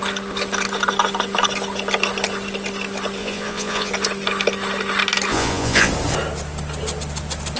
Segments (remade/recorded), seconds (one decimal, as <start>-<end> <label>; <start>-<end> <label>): 0.0-3.2 recorded; 3.2-3.9 remade; 3.9-5.3 recorded; 5.3-5.9 remade; 5.9-7.6 recorded

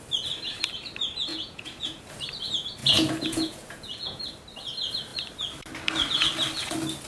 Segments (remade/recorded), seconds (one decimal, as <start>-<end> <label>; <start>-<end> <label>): 0.0-1.3 recorded; 1.3-2.0 remade; 2.0-2.8 recorded; 2.8-4.2 remade; 4.2-7.1 recorded

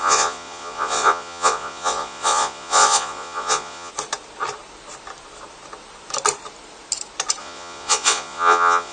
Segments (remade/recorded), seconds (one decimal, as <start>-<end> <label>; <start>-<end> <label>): 0.0-3.9 remade; 3.9-7.4 recorded; 7.4-8.9 remade